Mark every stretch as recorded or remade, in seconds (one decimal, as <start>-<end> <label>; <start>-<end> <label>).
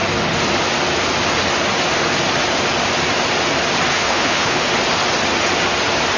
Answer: 0.0-3.9 recorded; 3.9-4.7 remade; 4.7-6.2 recorded